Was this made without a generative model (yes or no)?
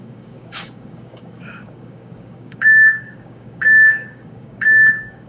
no